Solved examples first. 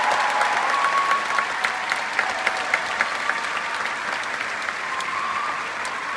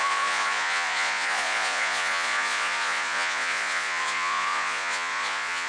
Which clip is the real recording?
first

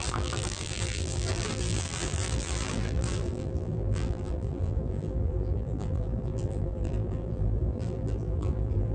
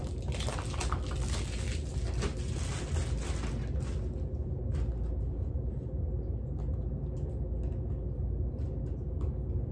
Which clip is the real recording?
second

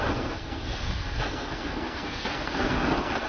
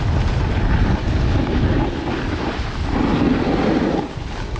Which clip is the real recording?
second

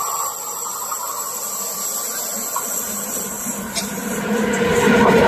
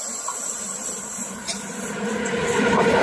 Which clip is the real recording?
first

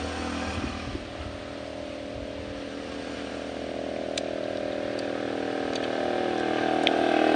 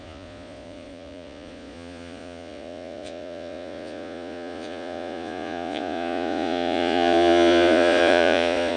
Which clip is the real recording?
first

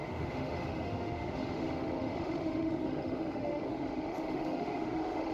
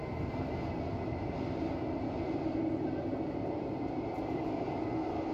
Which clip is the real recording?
second